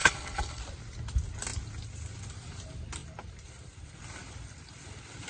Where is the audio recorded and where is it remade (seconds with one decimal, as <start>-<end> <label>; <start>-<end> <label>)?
0.0-0.6 remade; 0.6-5.3 recorded